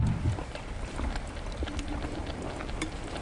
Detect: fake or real real